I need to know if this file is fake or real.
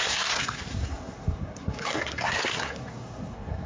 fake